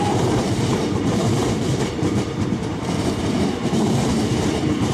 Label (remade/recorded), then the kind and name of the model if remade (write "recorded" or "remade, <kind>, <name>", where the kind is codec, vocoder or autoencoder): remade, vocoder, BigVGAN v2